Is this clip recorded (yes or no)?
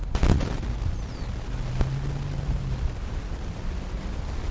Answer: yes